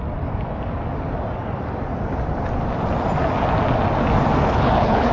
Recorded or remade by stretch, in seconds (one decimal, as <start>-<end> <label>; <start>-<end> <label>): 0.0-4.4 recorded; 4.4-5.1 remade